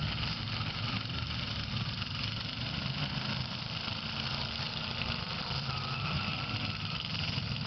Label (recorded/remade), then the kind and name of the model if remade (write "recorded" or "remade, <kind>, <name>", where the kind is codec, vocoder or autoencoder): remade, vocoder, BigVGAN v2